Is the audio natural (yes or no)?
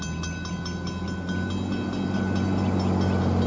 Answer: yes